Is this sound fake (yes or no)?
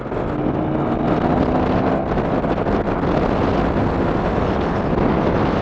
no